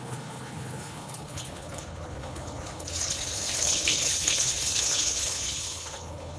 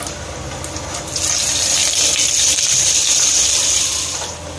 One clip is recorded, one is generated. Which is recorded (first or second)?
second